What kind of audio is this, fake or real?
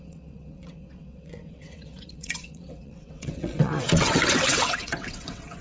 fake